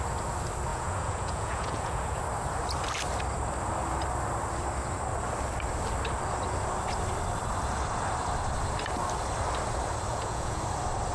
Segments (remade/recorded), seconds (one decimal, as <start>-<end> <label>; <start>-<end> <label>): 0.0-0.7 recorded; 0.7-2.2 remade; 2.2-10.1 recorded; 10.1-10.6 remade; 10.6-11.1 recorded